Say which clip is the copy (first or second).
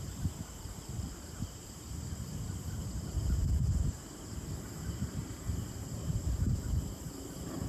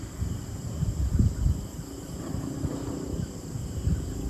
first